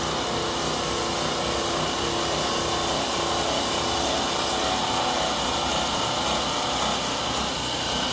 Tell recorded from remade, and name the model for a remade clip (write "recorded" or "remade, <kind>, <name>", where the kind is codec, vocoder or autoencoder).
recorded